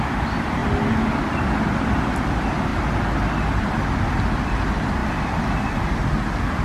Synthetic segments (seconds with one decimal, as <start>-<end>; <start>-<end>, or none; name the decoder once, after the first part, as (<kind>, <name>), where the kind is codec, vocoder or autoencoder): none